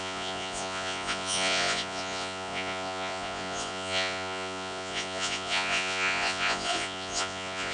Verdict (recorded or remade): remade